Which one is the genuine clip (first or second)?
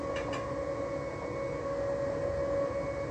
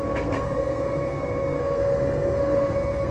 first